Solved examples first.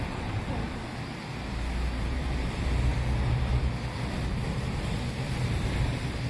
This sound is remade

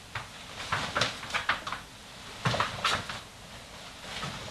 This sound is recorded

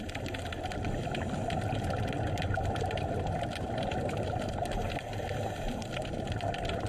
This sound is recorded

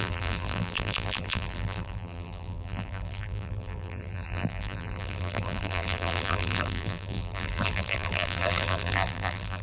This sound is remade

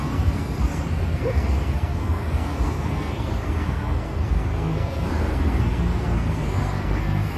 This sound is remade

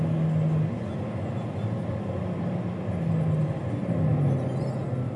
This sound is recorded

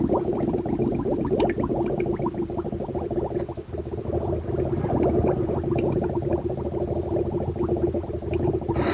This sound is recorded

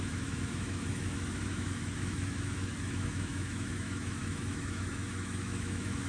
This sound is remade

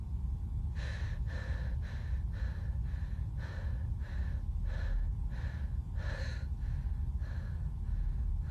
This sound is recorded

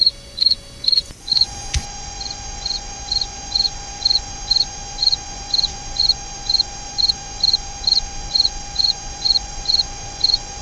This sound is remade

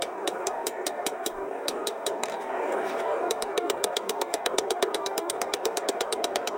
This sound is remade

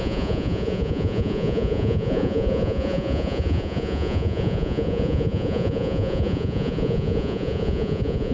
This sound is remade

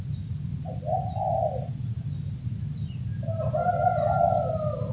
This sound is recorded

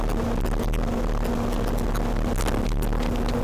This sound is recorded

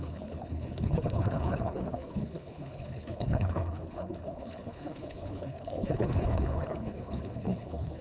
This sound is remade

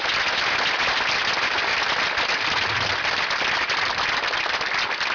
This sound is recorded